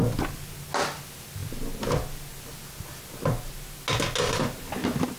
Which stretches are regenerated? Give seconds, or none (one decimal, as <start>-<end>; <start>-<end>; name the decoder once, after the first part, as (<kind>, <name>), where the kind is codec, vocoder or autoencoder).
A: none